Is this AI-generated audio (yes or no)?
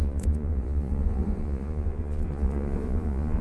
yes